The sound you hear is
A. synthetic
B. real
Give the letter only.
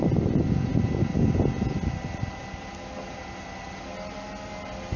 B